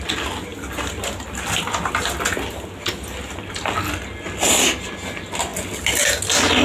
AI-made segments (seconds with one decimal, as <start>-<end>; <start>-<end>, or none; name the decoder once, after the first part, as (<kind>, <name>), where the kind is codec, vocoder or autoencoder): none